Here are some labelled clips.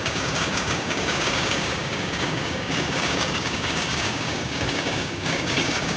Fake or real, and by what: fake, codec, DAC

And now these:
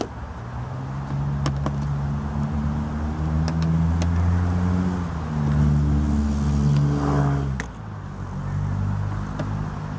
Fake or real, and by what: real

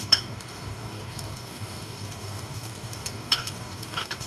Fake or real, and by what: fake, codec, DAC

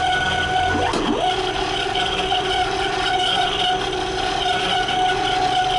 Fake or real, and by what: real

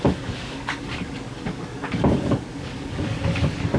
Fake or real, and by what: fake, codec, DAC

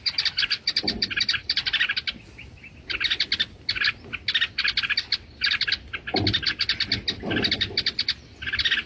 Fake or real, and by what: real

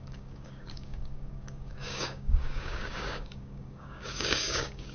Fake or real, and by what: fake, codec, DAC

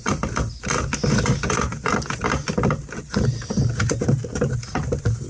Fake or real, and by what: real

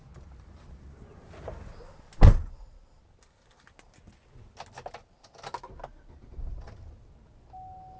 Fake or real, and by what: real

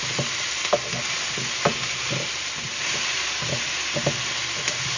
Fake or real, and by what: real